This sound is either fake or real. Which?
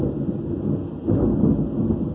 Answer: real